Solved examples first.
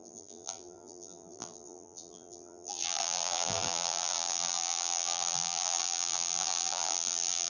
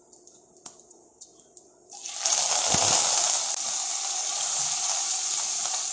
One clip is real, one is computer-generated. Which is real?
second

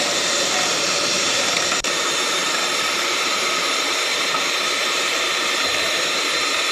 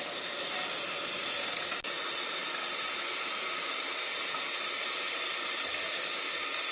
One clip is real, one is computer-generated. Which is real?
second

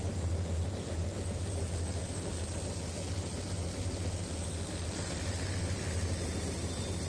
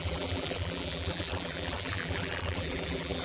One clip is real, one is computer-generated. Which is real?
first